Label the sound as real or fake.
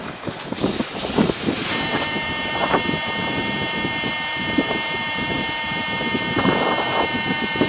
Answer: fake